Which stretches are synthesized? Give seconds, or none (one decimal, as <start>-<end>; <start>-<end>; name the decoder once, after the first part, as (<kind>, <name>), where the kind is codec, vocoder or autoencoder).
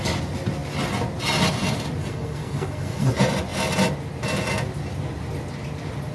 2.0-3.1 (codec, SNAC)